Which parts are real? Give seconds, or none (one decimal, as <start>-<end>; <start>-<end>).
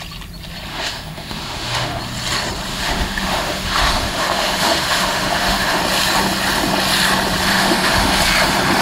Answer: 0.0-0.7; 2.0-2.7; 5.8-7.5; 8.2-8.8